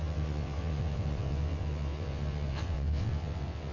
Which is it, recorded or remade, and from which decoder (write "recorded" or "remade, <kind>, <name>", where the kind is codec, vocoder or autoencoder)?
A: remade, vocoder, WaveNeXt